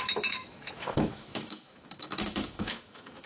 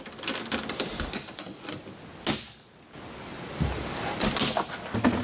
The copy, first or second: first